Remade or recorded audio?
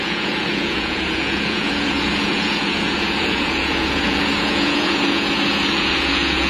remade